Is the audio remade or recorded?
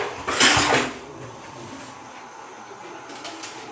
recorded